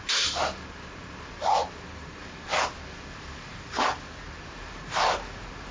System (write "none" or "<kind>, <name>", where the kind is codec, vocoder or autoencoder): none